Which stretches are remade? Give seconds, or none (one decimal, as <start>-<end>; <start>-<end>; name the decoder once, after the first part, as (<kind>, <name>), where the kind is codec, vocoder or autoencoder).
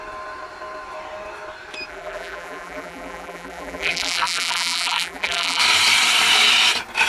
1.9-5.6 (vocoder, BigVGAN v2)